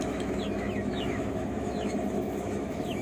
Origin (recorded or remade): remade